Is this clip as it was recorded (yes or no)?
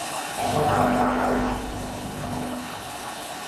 no